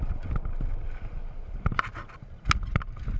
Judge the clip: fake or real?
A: real